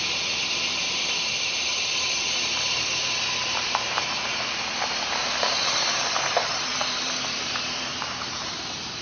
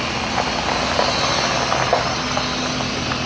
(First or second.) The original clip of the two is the second